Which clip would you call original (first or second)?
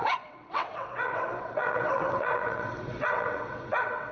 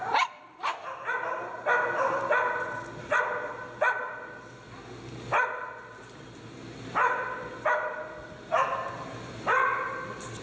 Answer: second